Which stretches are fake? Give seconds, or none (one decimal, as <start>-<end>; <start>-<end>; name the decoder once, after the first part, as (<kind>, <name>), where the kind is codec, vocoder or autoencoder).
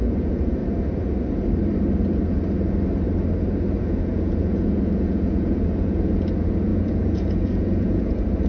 0.0-0.6 (vocoder, Vocos); 3.8-8.5